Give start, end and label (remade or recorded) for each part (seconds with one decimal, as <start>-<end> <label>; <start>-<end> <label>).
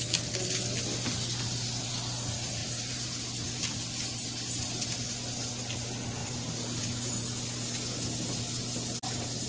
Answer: 0.0-2.6 recorded; 2.6-3.2 remade; 3.2-6.2 recorded; 6.2-6.8 remade; 6.8-9.5 recorded